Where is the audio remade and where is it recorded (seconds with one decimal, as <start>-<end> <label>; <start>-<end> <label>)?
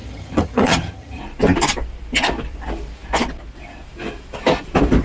0.0-1.2 remade; 1.2-5.0 recorded